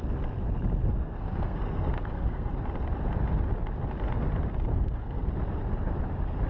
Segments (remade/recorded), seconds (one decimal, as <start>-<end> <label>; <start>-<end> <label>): 0.0-1.0 recorded; 1.0-2.5 remade; 2.5-4.7 recorded; 4.7-5.3 remade; 5.3-6.5 recorded